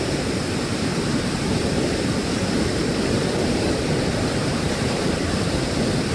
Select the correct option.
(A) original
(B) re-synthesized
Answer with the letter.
A